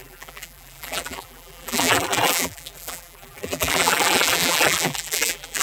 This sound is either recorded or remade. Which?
remade